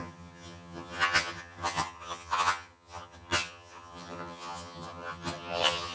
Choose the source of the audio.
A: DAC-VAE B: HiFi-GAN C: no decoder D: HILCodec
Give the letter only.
B